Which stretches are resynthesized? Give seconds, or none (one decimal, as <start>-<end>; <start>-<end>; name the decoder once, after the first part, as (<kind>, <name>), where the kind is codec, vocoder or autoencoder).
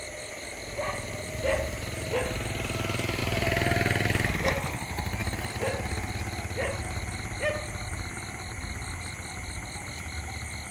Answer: none